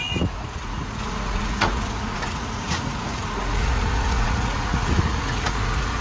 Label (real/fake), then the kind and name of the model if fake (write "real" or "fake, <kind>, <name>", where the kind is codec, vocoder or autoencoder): fake, vocoder, Vocos